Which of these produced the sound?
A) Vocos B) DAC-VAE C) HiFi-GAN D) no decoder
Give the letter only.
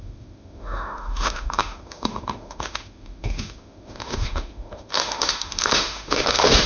B